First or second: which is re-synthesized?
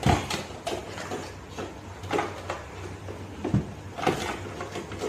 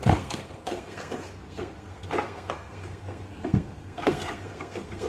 second